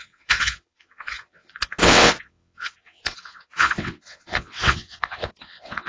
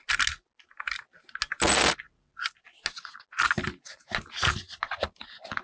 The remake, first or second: first